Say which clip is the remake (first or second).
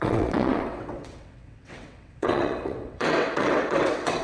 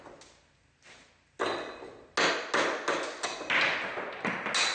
first